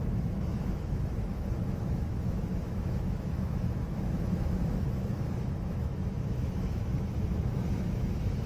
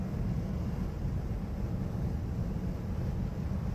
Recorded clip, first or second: second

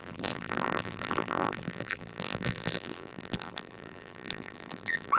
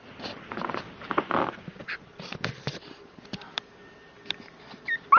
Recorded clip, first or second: second